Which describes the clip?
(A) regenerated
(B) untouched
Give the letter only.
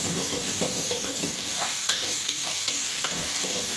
A